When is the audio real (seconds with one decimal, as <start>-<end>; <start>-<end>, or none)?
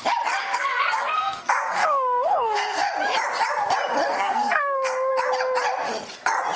0.0-0.4; 2.9-4.1; 5.1-6.6